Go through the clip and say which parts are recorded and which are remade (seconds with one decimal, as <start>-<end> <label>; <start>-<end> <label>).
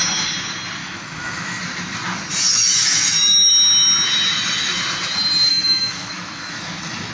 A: 0.0-0.8 recorded; 0.8-1.6 remade; 1.6-2.5 recorded; 2.5-3.5 remade; 3.5-5.5 recorded; 5.5-7.1 remade